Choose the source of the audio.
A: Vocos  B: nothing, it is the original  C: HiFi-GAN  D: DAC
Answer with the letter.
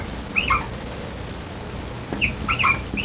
B